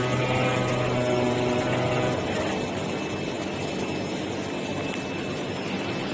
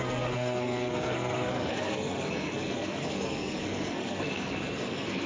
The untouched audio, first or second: first